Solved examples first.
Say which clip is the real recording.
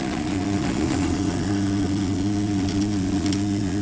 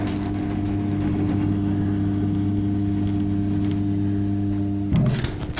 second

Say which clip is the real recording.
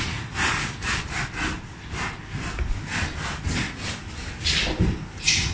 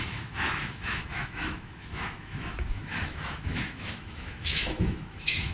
first